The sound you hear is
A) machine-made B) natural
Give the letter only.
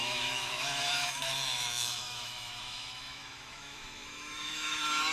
A